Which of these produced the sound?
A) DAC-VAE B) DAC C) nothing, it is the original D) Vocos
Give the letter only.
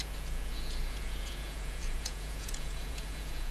D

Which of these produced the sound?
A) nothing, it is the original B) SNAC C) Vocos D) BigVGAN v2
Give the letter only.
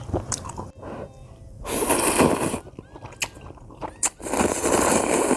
A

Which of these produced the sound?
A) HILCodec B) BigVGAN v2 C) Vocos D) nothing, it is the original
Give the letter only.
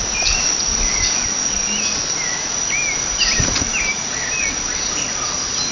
D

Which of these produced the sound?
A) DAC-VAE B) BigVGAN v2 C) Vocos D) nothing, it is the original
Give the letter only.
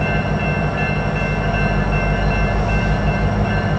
D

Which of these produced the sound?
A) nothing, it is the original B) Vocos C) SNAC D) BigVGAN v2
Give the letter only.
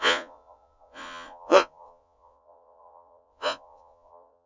B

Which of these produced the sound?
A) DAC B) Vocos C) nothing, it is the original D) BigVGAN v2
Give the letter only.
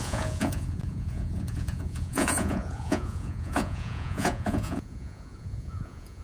B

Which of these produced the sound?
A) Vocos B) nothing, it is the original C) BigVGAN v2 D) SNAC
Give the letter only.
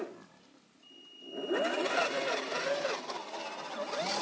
B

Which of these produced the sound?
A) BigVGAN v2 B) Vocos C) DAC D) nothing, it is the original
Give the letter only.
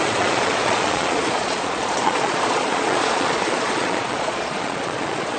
B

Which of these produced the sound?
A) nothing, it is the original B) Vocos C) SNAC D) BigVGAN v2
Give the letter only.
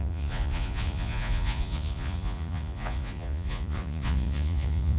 B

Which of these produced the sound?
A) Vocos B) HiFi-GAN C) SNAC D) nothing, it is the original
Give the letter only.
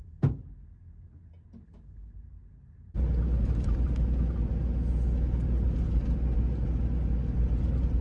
D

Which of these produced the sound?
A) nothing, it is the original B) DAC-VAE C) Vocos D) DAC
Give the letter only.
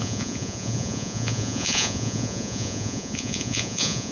C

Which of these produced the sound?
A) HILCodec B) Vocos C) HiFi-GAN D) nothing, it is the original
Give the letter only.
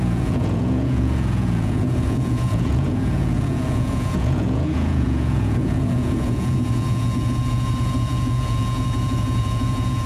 B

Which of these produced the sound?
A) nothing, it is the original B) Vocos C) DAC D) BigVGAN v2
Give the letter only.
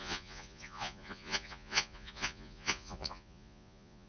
B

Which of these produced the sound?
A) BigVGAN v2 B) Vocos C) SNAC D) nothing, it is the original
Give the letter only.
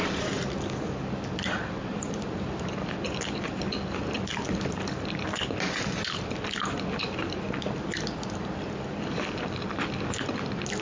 D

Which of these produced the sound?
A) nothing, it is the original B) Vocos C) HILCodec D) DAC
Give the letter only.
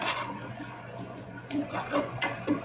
B